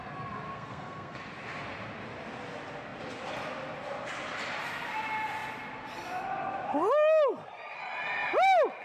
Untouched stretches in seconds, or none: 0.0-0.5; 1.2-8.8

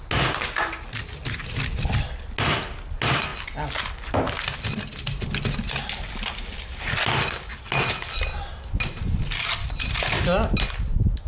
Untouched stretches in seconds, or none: 0.0-11.3

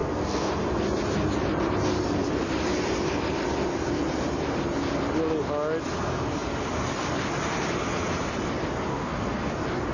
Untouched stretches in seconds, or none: 0.5-8.9; 9.5-9.9

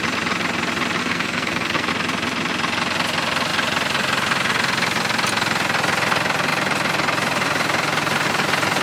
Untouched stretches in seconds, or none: 0.0-1.0; 1.9-8.8

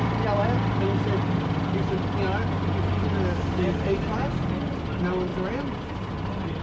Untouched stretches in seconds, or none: 0.0-6.6

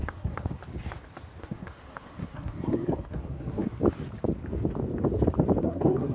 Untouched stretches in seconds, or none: 0.6-1.4; 3.8-5.6

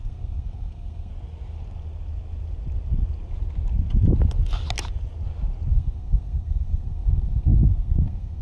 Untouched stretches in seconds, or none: 1.1-5.7